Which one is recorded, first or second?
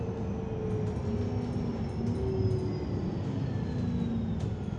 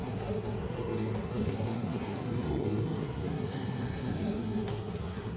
first